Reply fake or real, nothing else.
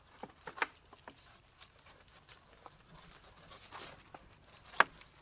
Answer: real